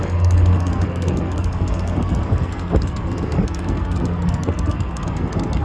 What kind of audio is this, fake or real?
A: fake